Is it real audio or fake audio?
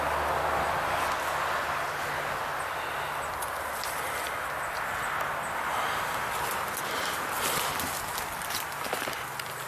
real